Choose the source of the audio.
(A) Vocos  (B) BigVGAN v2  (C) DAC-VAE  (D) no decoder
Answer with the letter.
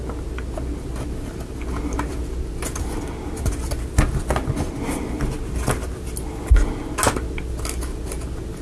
D